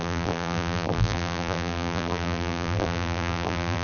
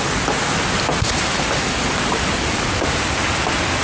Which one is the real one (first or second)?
second